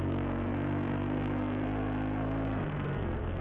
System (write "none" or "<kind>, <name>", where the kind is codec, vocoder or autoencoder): codec, SNAC